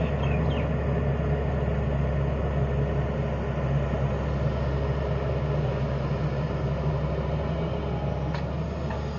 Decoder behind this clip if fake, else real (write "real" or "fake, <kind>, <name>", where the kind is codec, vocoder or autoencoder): real